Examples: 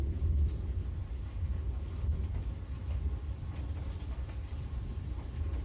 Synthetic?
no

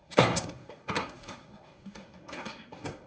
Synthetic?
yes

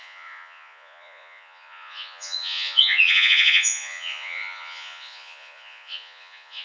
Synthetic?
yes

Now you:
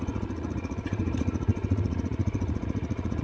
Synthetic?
yes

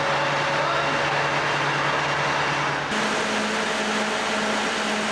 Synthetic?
no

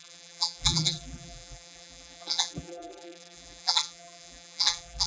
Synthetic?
yes